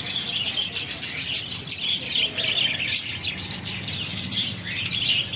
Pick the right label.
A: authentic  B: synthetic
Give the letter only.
A